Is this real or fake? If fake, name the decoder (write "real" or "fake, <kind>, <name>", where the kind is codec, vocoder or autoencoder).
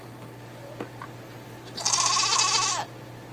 real